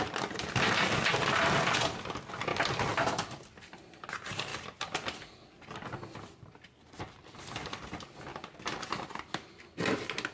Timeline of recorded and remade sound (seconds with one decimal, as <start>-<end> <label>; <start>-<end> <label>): 0.0-2.5 recorded; 2.5-3.8 remade; 3.8-4.5 recorded; 4.5-7.4 remade; 7.4-8.3 recorded; 8.3-8.8 remade; 8.8-10.3 recorded